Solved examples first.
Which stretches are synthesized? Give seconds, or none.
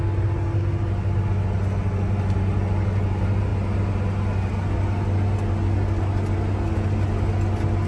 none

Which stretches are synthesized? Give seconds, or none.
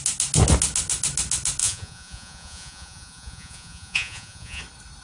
1.6-4.6 (vocoder, Vocos)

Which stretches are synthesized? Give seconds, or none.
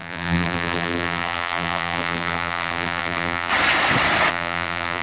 0.0-3.5 (vocoder, BigVGAN v2); 4.3-5.0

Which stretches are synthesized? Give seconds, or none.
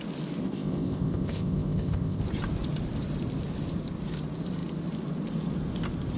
0.4-2.2 (codec, ZipCodec)